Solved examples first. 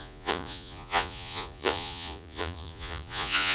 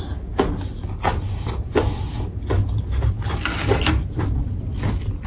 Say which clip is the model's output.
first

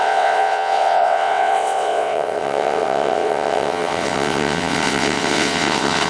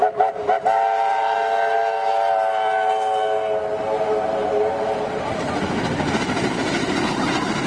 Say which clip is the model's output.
first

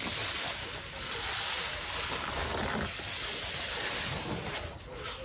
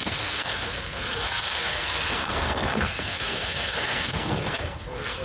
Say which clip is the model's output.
second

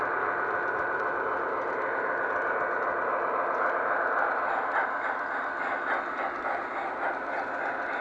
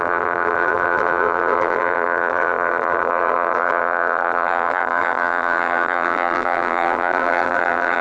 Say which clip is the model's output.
second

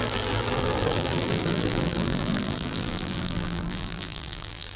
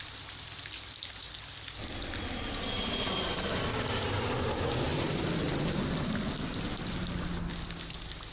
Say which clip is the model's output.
first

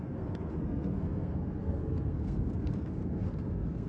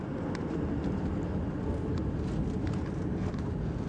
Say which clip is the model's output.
first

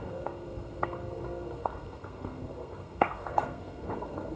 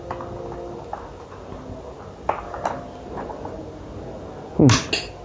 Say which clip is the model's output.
first